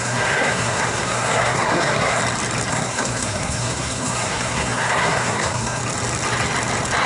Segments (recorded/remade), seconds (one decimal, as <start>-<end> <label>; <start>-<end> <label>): 0.0-2.2 remade; 2.2-2.7 recorded; 2.7-5.8 remade; 5.8-7.1 recorded